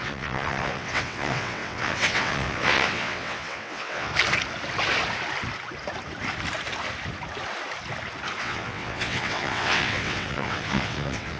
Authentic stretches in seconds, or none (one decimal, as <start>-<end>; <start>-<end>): 4.1-8.4